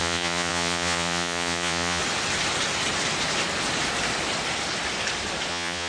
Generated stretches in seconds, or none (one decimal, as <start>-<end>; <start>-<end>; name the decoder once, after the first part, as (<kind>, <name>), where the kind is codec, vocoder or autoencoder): 0.0-2.0 (vocoder, Vocos); 5.5-5.9